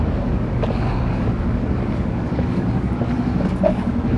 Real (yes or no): no